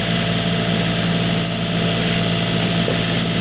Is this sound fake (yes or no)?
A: no